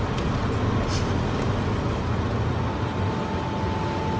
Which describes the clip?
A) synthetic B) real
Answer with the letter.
B